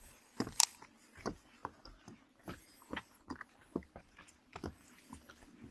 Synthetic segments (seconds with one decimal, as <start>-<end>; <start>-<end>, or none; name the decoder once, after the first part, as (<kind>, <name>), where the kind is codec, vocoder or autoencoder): none